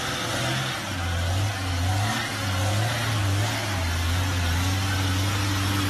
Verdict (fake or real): real